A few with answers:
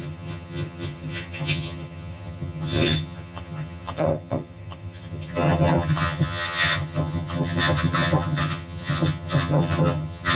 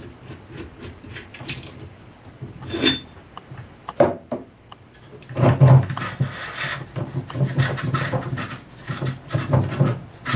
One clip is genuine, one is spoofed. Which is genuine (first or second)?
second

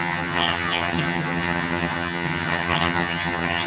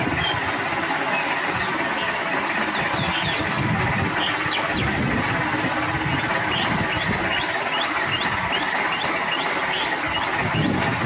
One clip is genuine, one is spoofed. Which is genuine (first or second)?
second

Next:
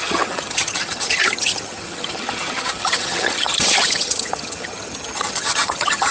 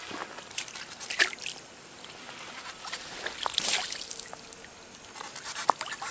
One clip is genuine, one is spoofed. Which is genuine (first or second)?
second